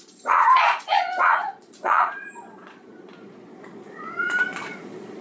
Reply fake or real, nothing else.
fake